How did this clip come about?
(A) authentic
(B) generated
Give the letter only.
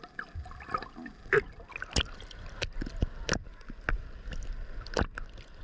A